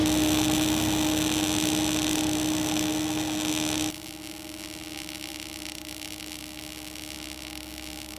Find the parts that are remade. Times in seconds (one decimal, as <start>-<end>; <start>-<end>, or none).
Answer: none